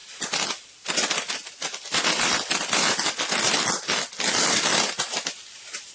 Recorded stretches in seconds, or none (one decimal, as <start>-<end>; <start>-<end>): 0.0-5.9